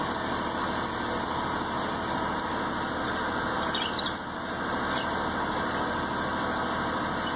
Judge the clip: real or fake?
real